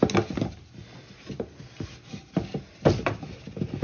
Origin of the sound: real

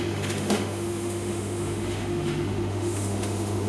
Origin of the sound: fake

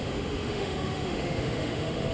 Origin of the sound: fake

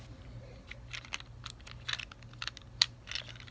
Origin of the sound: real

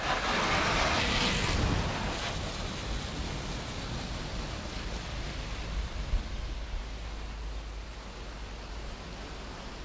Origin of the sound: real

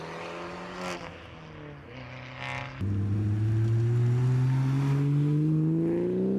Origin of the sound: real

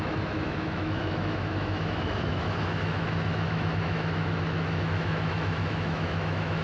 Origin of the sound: fake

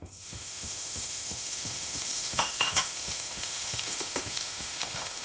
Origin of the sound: fake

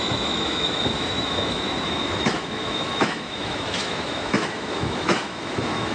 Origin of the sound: fake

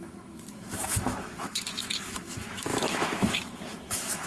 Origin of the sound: fake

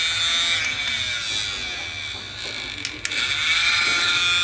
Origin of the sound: real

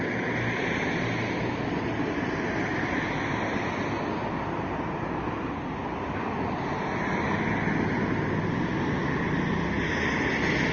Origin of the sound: real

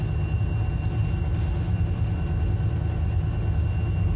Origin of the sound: real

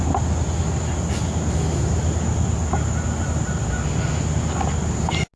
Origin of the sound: real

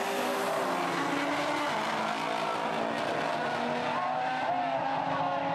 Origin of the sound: real